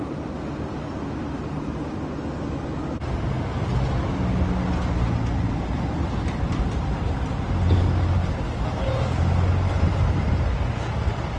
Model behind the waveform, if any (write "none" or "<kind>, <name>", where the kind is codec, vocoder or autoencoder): none